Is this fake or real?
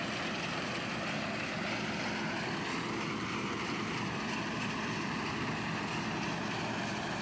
fake